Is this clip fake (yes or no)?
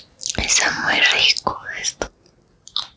no